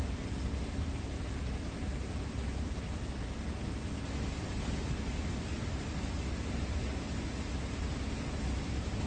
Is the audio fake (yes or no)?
no